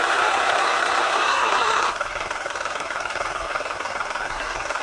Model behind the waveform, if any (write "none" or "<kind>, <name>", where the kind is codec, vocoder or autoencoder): codec, SNAC